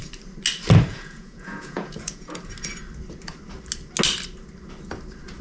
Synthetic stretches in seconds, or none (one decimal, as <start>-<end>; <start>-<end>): 0.9-2.3